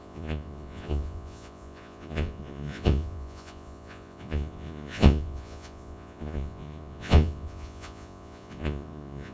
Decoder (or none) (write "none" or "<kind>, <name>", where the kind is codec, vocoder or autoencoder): vocoder, Vocos